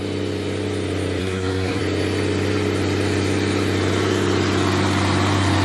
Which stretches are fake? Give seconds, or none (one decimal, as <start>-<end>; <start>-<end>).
1.2-1.8